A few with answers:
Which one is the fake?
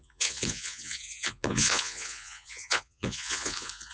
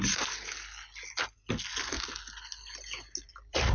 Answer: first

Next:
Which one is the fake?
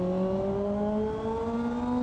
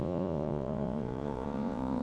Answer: second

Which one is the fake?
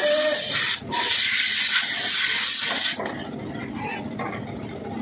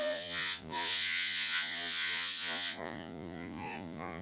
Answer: second